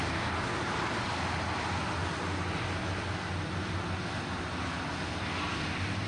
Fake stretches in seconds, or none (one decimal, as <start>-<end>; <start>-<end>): none